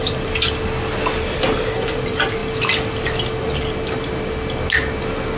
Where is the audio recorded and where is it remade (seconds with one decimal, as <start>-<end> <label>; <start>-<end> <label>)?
0.0-5.4 recorded